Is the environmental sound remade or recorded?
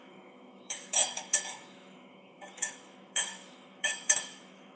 remade